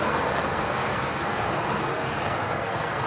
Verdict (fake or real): fake